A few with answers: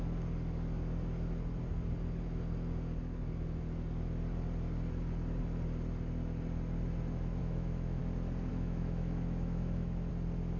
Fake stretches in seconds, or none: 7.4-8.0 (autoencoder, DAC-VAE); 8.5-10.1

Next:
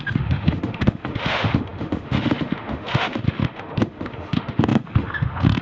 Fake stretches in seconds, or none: 0.0-5.6 (autoencoder, DAC-VAE)

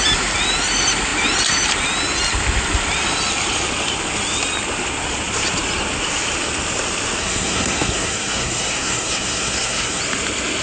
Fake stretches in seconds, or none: 7.2-10.0 (codec, SNAC)

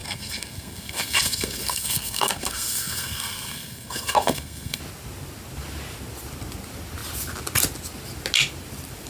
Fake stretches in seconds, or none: 0.0-4.8 (codec, SNAC)

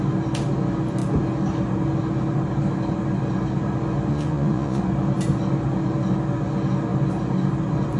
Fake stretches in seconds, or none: 4.1-4.8 (vocoder, Vocos)

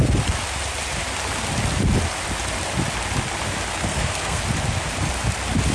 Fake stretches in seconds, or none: 3.9-4.4 (codec, SNAC)

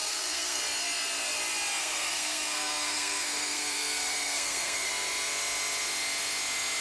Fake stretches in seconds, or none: 0.0-0.6 (codec, SNAC); 1.8-4.9

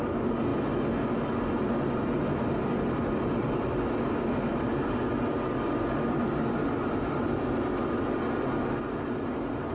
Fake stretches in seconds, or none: none